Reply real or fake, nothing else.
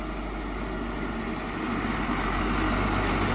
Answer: real